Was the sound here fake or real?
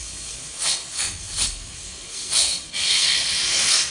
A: fake